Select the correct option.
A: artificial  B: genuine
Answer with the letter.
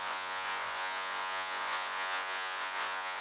A